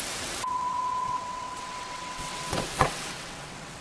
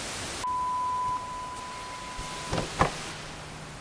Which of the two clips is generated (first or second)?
first